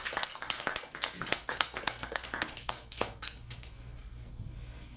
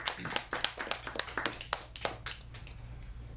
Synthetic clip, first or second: first